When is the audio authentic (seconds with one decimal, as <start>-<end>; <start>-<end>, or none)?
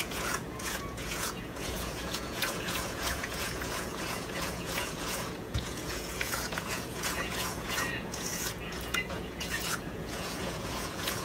none